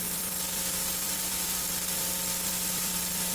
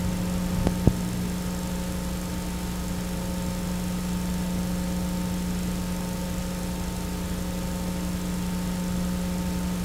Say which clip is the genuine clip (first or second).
second